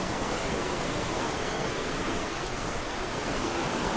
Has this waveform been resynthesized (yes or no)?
yes